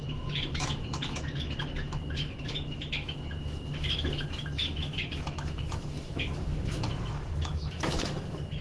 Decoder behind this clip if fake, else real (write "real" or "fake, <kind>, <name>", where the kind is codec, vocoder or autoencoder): fake, autoencoder, DAC-VAE